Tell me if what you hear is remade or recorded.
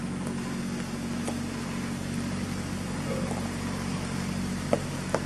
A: recorded